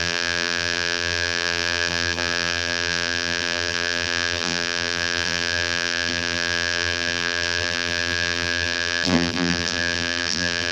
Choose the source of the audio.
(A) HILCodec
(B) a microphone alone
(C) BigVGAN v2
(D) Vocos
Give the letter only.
C